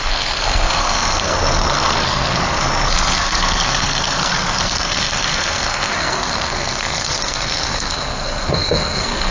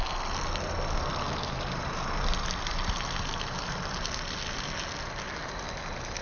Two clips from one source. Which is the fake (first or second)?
first